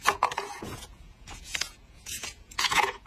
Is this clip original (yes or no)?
no